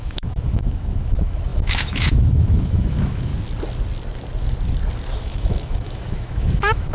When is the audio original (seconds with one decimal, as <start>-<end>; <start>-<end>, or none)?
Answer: 3.3-5.2